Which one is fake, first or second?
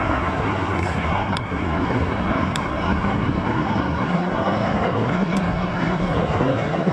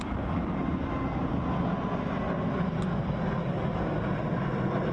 first